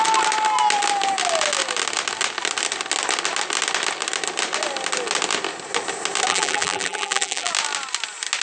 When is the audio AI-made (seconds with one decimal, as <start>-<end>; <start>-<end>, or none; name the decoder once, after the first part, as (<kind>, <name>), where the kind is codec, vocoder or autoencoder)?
6.3-7.5 (vocoder, BigVGAN v2)